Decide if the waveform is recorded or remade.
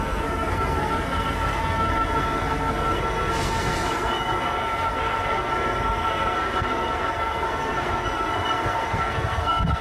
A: remade